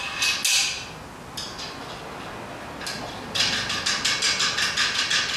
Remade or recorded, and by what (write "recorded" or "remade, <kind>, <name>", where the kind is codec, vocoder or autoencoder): recorded